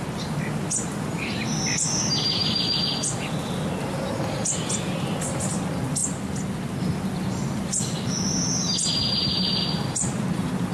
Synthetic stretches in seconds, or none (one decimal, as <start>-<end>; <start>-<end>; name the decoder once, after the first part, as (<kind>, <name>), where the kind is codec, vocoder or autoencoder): none